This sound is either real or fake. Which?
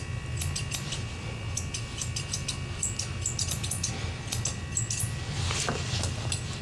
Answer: real